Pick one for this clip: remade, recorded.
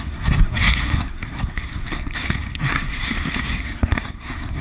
remade